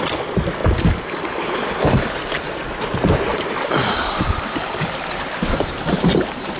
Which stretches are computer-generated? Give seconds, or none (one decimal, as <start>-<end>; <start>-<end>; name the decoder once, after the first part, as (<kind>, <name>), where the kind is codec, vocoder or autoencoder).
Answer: 0.6-2.6 (vocoder, BigVGAN v2); 3.3-6.6

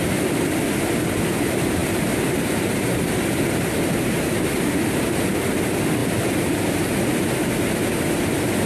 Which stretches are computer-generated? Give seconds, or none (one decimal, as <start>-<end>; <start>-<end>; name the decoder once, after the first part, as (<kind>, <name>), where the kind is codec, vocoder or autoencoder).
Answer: 1.8-2.4 (vocoder, BigVGAN v2); 6.0-6.6